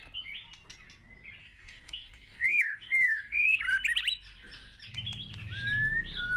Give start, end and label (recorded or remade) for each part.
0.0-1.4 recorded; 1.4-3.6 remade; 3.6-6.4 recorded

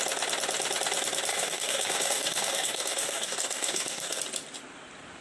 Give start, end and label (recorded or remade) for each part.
0.0-1.3 recorded; 1.3-4.2 remade; 4.2-5.2 recorded

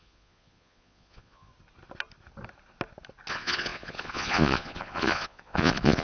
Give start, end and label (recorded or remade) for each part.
0.0-1.5 remade; 1.5-3.3 recorded; 3.3-6.0 remade

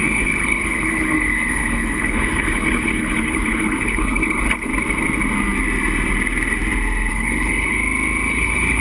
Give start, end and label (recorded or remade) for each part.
0.0-4.7 remade; 4.7-7.1 recorded; 7.1-7.8 remade; 7.8-8.3 recorded; 8.3-8.8 remade

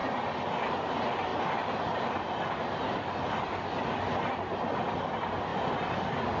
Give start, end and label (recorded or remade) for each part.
0.0-6.4 recorded